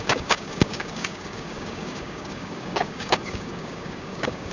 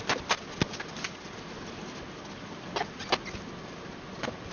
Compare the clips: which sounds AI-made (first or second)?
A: first